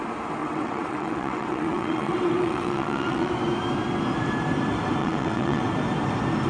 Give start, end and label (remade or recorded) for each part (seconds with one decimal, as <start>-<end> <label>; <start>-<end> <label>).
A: 0.0-0.4 recorded; 0.4-3.3 remade; 3.3-5.0 recorded; 5.0-5.6 remade; 5.6-6.5 recorded